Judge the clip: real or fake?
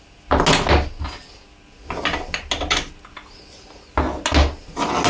real